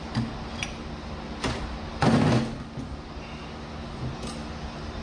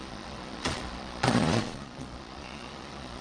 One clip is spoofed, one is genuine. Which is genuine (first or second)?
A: first